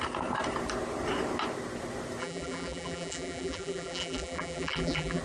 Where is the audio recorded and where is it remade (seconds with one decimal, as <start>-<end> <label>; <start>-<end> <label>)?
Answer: 0.0-2.2 recorded; 2.2-5.2 remade